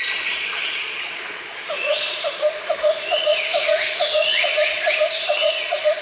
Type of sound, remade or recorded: remade